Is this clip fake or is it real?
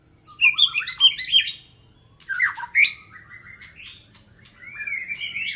real